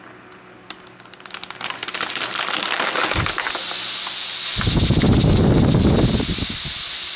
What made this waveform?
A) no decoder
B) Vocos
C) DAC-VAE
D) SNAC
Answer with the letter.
A